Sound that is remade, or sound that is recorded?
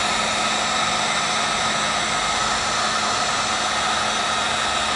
recorded